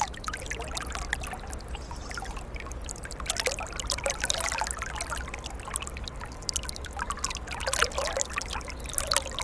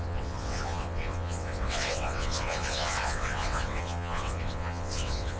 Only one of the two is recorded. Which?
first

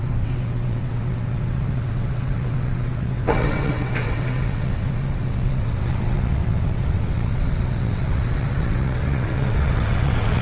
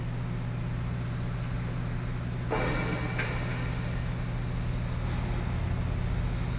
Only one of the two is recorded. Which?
second